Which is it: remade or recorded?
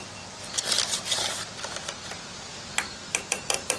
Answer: recorded